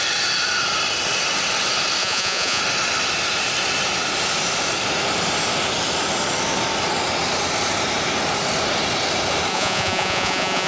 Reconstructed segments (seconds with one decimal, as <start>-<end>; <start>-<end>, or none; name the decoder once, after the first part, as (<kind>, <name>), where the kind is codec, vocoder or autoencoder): 2.0-2.6 (vocoder, Vocos); 9.5-10.7